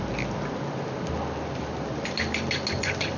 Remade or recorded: remade